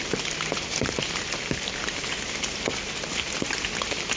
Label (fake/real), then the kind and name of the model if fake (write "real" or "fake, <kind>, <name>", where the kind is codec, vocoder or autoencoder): real